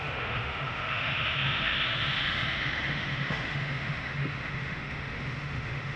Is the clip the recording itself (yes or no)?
no